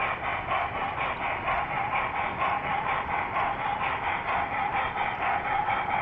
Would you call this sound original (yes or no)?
no